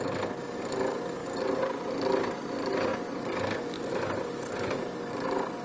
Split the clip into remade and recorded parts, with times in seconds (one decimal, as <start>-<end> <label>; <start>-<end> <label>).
0.0-5.6 recorded